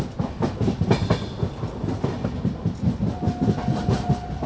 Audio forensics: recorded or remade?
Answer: recorded